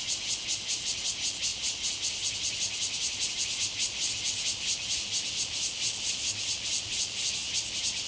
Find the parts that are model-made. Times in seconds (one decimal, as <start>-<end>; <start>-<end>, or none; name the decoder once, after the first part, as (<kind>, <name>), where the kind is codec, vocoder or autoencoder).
none